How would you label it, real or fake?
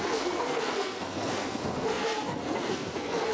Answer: fake